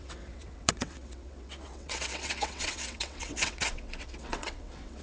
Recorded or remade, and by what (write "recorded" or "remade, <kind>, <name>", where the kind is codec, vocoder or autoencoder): remade, vocoder, WaveNeXt